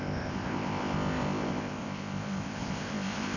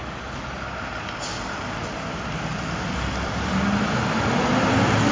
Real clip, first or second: second